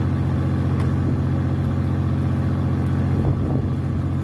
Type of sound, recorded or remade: recorded